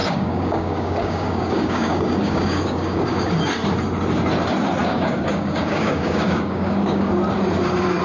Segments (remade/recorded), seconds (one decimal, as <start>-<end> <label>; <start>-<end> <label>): 0.0-3.3 remade; 3.3-4.8 recorded; 4.8-7.1 remade; 7.1-8.0 recorded